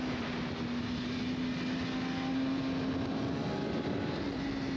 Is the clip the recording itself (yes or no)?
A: yes